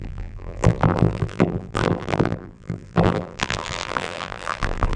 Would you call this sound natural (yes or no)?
no